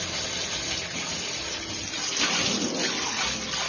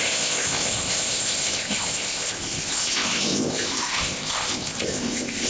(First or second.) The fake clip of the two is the second